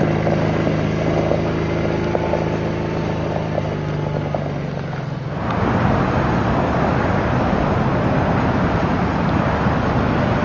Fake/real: real